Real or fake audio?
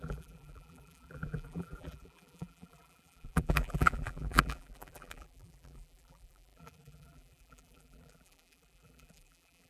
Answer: fake